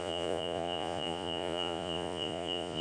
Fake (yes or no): yes